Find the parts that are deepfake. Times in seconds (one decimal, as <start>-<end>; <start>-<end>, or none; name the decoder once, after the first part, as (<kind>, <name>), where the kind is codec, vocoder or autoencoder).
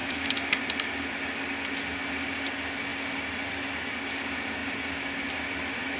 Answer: 0.0-0.5 (autoencoder, DAC-VAE)